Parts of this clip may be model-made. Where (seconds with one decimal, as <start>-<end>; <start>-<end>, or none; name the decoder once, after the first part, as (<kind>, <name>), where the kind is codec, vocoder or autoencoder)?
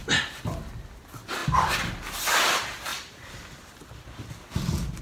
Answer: 0.0-0.6 (vocoder, BigVGAN v2); 2.9-4.4